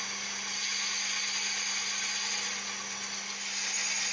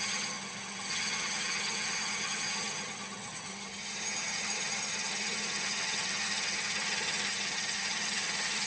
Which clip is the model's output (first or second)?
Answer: second